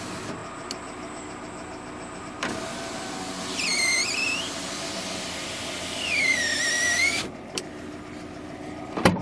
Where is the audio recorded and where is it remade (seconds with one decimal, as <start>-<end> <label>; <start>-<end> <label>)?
0.0-0.4 remade; 0.4-2.2 recorded; 2.2-9.2 remade